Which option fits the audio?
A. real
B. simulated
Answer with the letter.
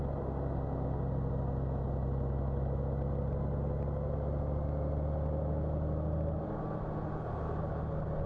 A